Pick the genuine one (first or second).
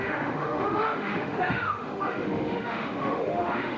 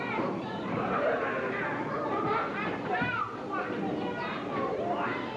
second